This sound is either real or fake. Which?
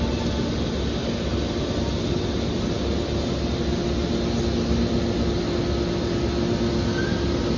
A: real